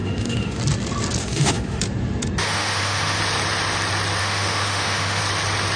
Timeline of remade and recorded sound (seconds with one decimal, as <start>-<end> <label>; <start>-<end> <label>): 0.0-0.6 remade; 0.6-1.2 recorded; 1.2-1.8 remade; 1.8-2.4 recorded; 2.4-3.2 remade; 3.2-4.2 recorded; 4.2-5.2 remade; 5.2-5.8 recorded